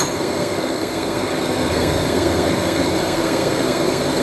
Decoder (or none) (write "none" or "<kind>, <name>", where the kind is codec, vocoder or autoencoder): codec, SNAC